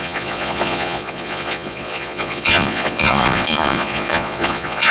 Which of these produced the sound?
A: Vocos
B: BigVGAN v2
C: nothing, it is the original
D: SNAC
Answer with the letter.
A